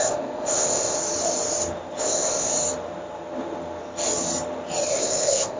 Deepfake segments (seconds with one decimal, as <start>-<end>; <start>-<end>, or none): 0.0-1.0; 2.0-2.5; 4.9-5.6

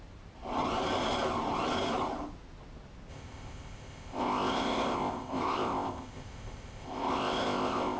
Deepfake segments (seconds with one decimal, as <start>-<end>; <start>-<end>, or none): 3.1-8.0

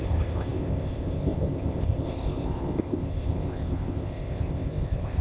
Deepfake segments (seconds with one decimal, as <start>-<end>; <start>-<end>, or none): 0.0-5.2